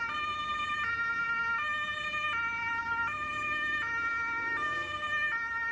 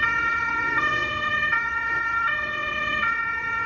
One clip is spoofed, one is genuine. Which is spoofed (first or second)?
second